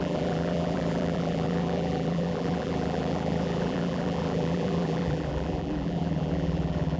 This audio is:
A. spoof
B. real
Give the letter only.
A